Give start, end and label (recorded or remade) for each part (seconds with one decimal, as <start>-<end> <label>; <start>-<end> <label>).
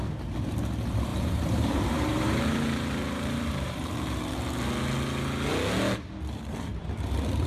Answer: 0.0-1.1 recorded; 1.1-4.2 remade; 4.2-7.5 recorded